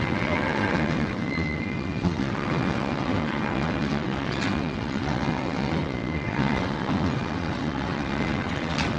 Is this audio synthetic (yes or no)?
yes